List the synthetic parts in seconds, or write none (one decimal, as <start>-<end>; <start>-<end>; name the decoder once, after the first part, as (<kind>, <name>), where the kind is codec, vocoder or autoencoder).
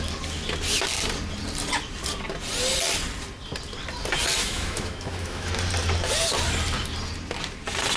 4.4-5.5 (autoencoder, DAC-VAE)